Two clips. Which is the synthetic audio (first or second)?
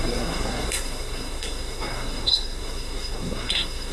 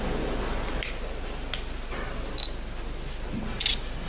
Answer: first